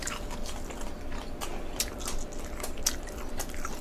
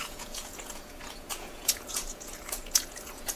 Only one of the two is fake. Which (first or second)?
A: second